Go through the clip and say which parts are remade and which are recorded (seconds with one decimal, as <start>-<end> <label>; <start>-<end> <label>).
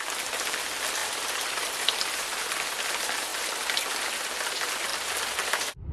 0.0-1.0 recorded; 1.0-2.5 remade; 2.5-5.9 recorded